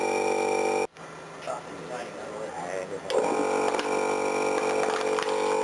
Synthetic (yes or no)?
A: no